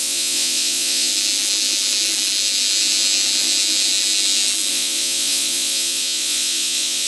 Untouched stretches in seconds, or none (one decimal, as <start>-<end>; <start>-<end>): 1.1-4.7